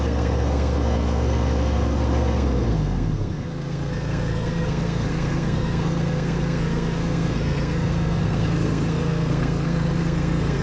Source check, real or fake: fake